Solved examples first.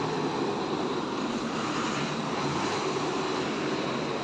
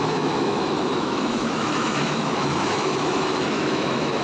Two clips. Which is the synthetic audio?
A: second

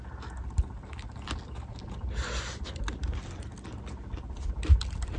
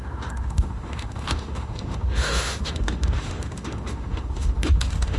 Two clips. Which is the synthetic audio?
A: second